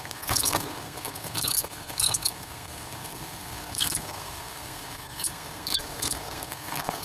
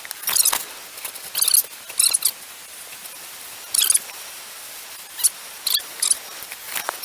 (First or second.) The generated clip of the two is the first